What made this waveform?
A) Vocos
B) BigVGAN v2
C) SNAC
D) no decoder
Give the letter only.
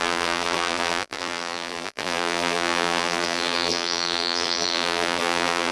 B